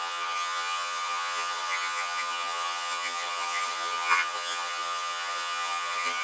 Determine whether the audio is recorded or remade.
remade